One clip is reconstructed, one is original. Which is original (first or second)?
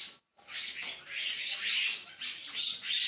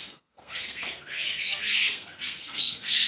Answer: first